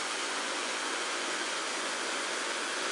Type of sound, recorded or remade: remade